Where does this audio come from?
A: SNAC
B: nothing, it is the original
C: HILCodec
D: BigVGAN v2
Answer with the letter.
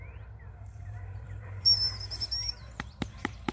D